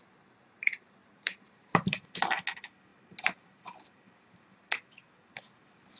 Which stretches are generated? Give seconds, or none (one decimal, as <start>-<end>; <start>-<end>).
1.0-2.2; 2.9-4.2